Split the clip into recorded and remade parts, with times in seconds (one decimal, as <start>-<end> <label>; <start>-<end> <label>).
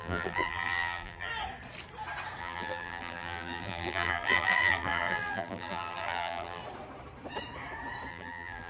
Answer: 0.0-1.3 remade; 1.3-2.4 recorded; 2.4-6.6 remade; 6.6-8.1 recorded; 8.1-8.7 remade